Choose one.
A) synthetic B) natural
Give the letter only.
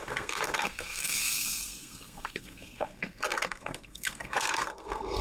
A